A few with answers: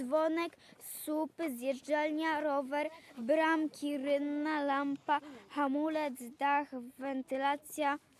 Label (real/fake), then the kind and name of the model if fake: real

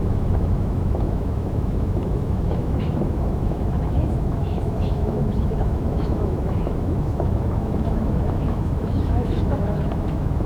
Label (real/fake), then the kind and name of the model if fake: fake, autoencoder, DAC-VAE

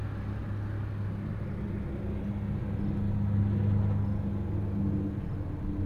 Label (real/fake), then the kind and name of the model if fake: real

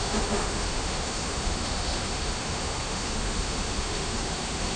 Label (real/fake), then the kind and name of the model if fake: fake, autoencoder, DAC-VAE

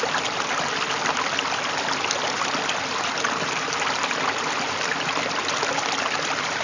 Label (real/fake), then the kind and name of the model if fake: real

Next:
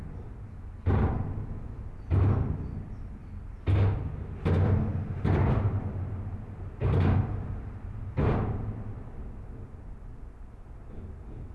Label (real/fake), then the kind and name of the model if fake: real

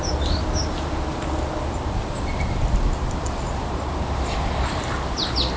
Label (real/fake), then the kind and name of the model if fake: real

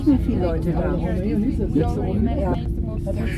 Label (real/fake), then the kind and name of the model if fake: real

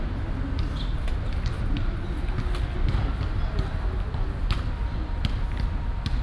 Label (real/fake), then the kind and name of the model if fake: real